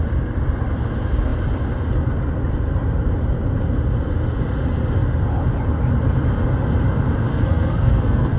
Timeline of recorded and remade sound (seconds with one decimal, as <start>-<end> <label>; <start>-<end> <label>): 0.0-7.3 recorded; 7.3-8.4 remade